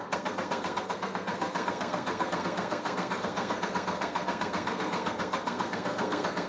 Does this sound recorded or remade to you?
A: remade